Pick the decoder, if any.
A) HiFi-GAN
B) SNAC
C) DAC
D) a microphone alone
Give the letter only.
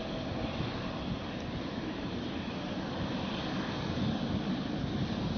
D